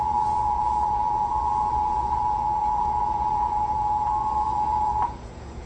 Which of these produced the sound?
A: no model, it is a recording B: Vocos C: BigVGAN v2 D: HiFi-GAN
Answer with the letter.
B